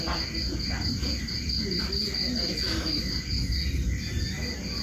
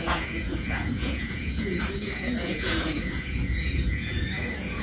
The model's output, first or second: second